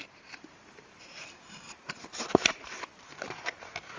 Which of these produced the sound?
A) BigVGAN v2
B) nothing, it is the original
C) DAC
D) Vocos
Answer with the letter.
A